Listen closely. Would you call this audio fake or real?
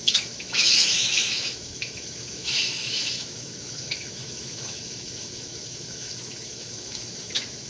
fake